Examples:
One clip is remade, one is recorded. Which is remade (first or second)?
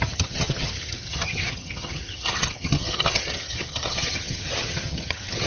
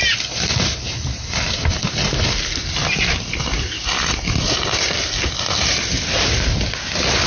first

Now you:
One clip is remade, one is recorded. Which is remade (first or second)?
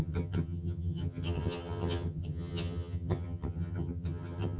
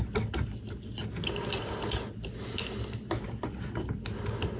first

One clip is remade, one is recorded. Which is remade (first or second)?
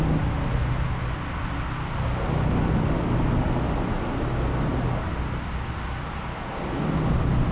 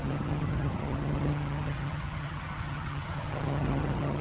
second